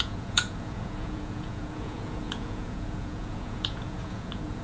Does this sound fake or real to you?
fake